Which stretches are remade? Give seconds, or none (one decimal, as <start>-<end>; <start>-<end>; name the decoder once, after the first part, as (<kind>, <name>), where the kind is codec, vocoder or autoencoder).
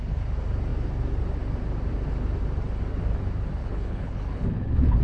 3.6-5.0 (codec, HILCodec)